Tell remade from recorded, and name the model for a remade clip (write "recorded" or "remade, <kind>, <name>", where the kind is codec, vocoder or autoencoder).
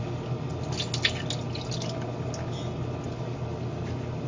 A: recorded